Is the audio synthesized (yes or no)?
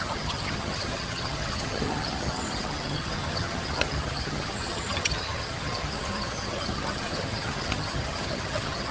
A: yes